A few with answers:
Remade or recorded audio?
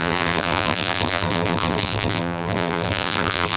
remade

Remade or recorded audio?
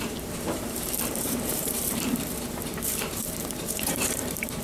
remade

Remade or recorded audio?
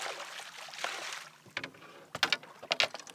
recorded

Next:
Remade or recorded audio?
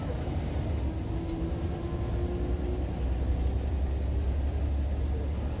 recorded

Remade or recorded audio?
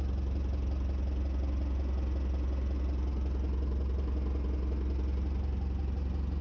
recorded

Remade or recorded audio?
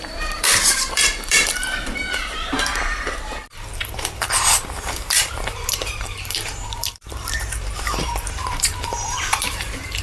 remade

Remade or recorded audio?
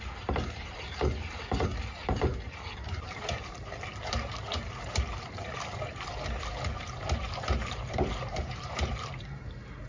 remade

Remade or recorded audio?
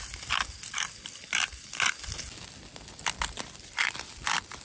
recorded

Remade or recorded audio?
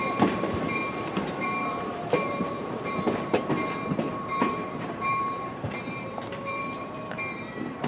remade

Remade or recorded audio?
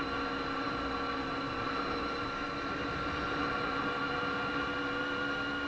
recorded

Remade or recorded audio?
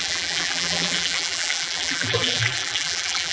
remade